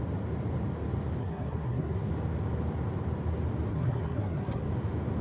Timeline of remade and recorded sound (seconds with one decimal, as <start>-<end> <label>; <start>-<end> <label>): 0.0-1.2 recorded; 1.2-2.1 remade; 2.1-3.7 recorded; 3.7-4.7 remade; 4.7-5.2 recorded